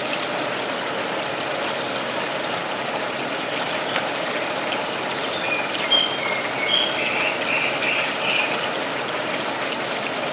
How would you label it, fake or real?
real